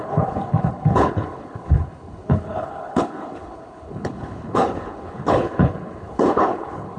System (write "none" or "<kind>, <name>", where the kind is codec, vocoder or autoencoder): codec, HILCodec